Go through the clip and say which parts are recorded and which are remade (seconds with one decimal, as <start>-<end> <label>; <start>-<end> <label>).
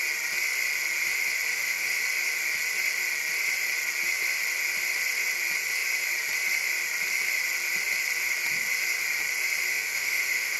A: 0.0-1.5 recorded; 1.5-2.0 remade; 2.0-9.7 recorded; 9.7-10.6 remade